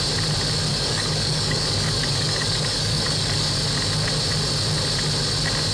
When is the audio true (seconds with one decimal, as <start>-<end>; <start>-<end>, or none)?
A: 0.0-0.7; 3.5-5.7